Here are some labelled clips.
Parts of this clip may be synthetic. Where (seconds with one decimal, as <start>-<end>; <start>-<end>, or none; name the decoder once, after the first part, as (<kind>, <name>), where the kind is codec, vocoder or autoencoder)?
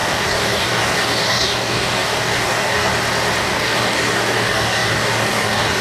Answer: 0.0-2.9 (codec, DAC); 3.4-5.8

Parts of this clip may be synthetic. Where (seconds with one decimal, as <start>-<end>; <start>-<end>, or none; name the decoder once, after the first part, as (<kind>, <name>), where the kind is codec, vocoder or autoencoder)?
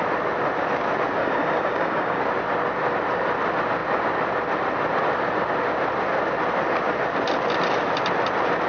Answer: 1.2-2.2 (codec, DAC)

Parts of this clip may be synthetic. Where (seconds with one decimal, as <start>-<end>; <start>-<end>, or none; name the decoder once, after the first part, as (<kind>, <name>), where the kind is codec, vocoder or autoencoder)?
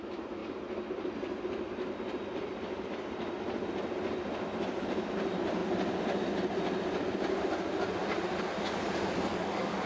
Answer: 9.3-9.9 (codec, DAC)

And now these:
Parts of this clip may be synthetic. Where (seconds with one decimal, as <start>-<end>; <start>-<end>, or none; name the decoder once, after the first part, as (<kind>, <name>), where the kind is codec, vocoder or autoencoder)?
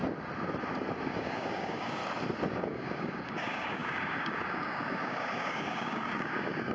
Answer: 1.0-2.0 (codec, DAC); 2.5-6.7